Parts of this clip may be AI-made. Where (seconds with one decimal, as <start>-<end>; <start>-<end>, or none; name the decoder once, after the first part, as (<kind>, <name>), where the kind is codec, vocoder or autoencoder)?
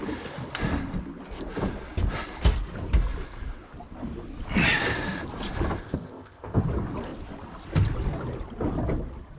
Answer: 5.8-6.6 (codec, ZipCodec)